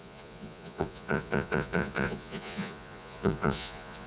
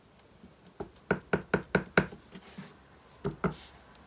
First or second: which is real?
second